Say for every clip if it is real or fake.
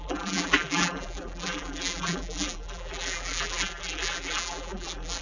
fake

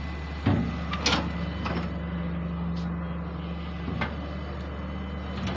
real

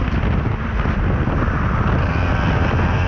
real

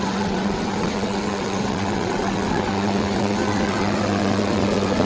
fake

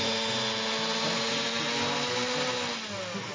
real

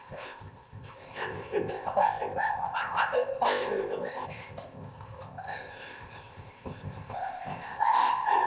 fake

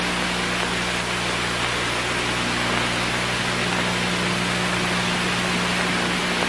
real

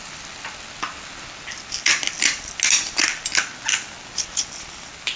real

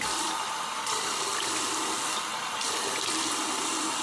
real